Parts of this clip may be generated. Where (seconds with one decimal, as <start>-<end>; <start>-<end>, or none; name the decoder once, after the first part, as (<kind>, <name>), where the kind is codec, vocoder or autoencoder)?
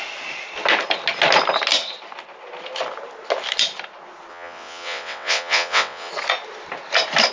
4.3-6.1 (vocoder, WaveNeXt)